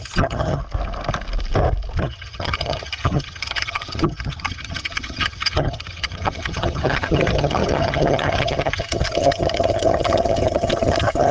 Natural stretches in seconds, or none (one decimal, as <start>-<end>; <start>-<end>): 0.6-2.0